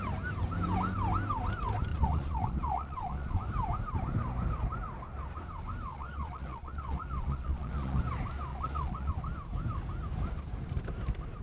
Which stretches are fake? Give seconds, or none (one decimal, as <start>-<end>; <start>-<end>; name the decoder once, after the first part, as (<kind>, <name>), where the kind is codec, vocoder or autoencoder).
1.9-3.4 (vocoder, Vocos); 5.9-8.0; 8.5-9.1